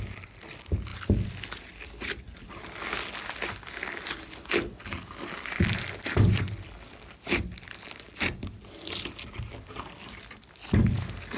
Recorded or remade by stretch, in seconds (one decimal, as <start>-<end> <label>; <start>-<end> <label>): 0.0-11.4 recorded